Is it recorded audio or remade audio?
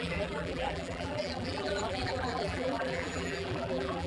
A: remade